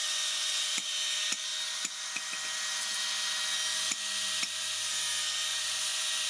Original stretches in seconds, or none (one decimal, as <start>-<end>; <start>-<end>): 0.9-5.5